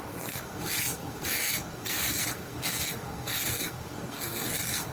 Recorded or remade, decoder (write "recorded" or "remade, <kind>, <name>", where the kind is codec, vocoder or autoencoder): remade, codec, SNAC